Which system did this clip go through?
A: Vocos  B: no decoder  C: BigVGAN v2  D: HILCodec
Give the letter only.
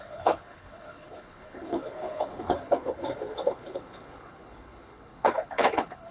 D